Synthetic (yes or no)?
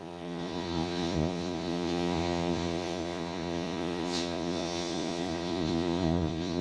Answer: yes